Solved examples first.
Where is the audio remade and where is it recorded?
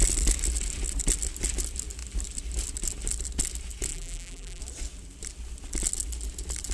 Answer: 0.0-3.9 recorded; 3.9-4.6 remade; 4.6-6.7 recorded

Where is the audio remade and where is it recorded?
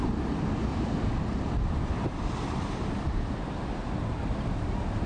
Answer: 0.0-0.7 recorded; 0.7-3.4 remade; 3.4-5.1 recorded